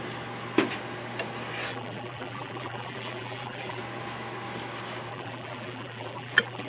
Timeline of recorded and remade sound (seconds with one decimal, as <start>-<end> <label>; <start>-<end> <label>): 0.0-1.7 recorded; 1.7-3.8 remade; 3.8-5.1 recorded; 5.1-6.7 remade